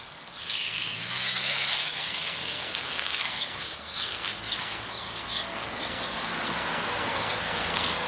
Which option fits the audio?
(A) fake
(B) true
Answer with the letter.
A